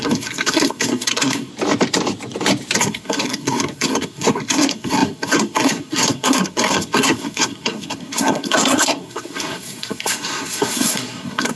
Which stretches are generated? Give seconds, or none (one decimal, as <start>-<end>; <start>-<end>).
0.0-1.5; 2.8-11.6